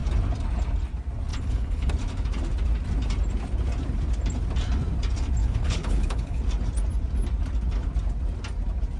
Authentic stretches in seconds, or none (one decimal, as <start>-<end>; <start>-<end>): 0.0-1.3; 1.9-5.4; 6.4-9.0